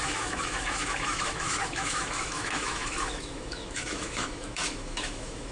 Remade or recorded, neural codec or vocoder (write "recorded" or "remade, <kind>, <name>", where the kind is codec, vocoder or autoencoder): remade, autoencoder, DAC-VAE